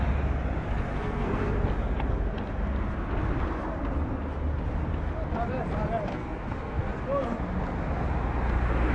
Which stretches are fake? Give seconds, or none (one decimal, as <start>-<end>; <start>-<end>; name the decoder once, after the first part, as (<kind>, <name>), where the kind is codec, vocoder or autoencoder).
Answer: 0.9-1.5 (codec, SNAC); 6.1-7.0